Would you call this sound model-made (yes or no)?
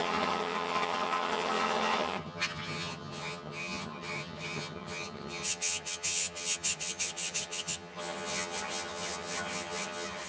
yes